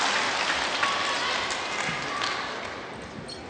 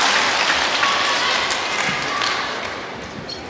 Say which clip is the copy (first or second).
second